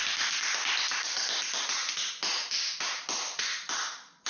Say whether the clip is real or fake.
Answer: real